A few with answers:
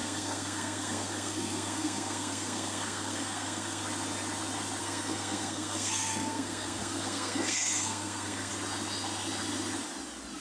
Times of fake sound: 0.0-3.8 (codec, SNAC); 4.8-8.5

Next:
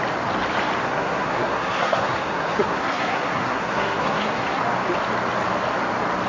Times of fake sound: 0.8-4.6 (codec, SNAC)

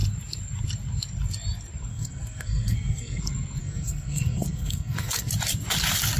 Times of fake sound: 1.9-3.2 (codec, SNAC); 3.6-5.3